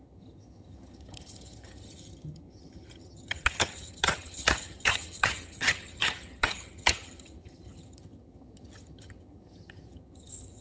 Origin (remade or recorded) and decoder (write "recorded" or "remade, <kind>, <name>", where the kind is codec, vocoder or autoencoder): remade, vocoder, HiFi-GAN